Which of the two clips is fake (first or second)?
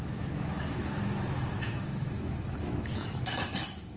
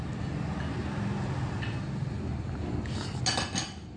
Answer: first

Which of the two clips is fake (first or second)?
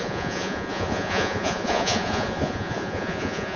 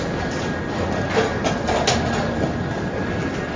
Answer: first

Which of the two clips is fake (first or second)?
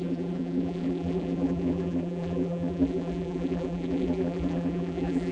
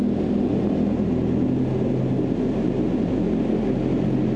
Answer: first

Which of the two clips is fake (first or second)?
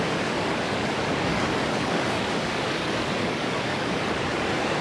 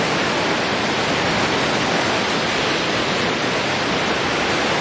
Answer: first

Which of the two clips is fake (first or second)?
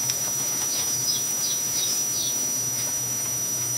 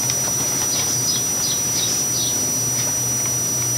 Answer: first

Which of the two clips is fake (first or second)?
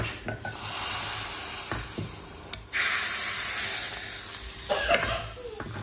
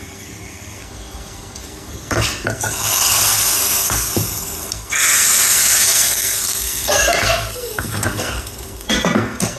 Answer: second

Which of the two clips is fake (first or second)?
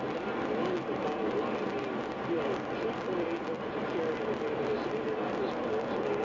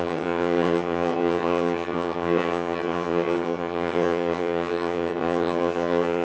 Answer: second